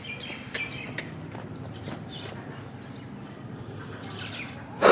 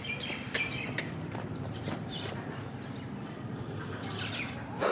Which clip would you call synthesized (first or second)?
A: second